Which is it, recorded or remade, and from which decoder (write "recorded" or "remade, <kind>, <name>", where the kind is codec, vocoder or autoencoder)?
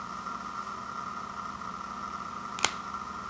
recorded